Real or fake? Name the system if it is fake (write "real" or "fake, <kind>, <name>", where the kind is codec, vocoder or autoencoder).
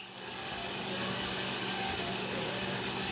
fake, codec, DAC